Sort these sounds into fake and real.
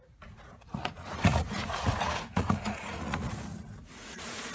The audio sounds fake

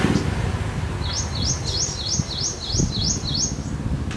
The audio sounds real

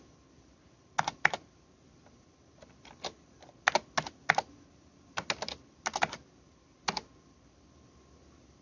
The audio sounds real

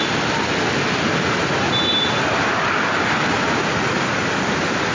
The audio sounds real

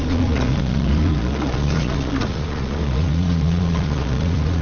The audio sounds fake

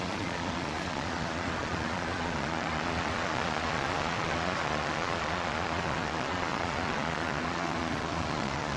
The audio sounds fake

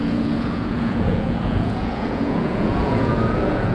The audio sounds fake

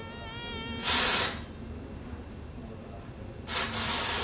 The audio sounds real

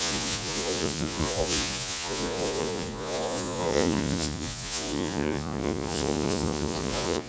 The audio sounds fake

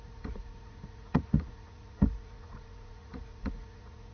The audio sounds fake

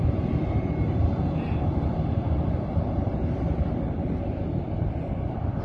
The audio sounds real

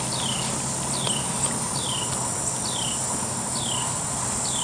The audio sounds real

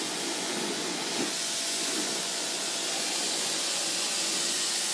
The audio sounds fake